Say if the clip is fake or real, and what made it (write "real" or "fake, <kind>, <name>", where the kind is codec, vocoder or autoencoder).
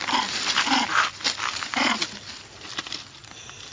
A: real